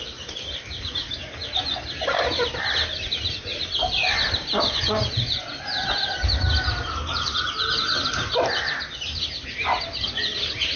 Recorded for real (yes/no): yes